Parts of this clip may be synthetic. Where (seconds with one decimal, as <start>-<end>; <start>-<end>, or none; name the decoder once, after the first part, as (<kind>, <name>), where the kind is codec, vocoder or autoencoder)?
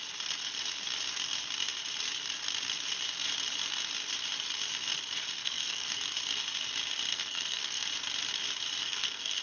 5.4-6.0 (codec, SNAC); 7.1-7.9; 8.8-9.4